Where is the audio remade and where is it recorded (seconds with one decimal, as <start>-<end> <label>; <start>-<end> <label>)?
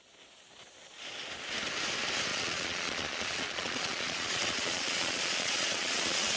0.0-2.3 recorded; 2.3-6.4 remade